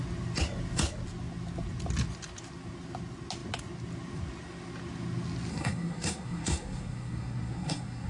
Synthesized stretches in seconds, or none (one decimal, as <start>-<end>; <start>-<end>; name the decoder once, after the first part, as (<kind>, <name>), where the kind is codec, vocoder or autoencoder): 5.5-8.1 (codec, SNAC)